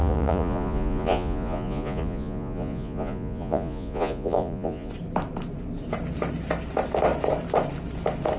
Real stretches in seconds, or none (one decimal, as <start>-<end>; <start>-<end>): 4.9-8.4